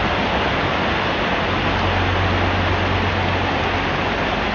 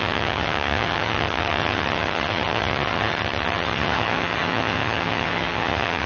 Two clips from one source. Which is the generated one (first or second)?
second